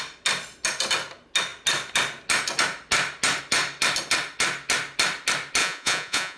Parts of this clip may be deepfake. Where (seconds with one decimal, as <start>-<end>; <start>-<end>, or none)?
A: 5.6-6.4